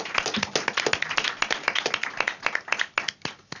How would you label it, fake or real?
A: real